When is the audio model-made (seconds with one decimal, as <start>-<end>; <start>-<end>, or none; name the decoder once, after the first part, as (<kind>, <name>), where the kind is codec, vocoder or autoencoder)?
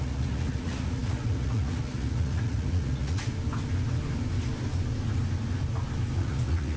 0.0-3.3 (vocoder, Vocos); 6.2-6.8